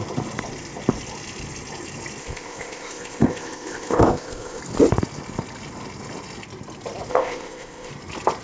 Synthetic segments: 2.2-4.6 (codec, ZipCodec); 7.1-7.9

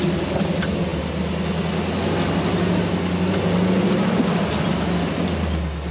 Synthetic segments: none

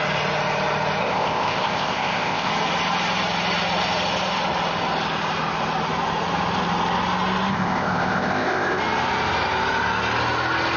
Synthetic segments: 1.0-2.5 (codec, ZipCodec); 7.5-8.8

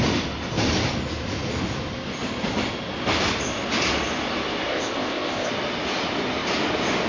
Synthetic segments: 4.7-5.5 (codec, ZipCodec)

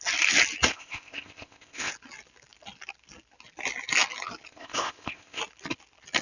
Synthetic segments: 0.7-1.9 (codec, ZipCodec); 4.5-5.4

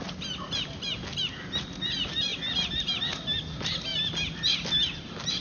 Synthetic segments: none

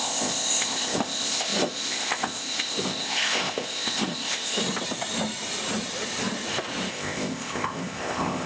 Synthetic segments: 0.0-4.6 (codec, ZipCodec); 6.9-8.5